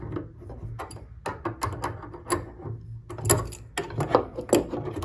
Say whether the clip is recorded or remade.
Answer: recorded